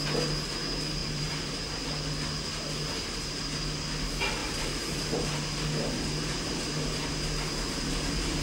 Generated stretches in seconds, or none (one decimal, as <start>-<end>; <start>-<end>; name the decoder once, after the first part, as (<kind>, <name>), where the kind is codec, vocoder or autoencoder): 1.0-1.8 (vocoder, BigVGAN v2); 4.4-7.2